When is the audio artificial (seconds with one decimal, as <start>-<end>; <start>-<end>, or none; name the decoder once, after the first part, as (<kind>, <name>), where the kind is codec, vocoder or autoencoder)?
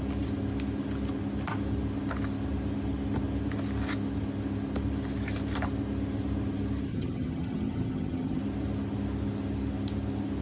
6.9-8.4 (vocoder, HiFi-GAN)